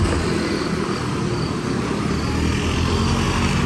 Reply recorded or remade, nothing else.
recorded